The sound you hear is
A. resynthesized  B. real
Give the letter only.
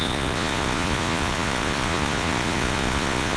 A